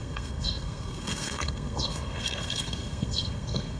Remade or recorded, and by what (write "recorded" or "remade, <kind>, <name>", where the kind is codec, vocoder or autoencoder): remade, codec, SNAC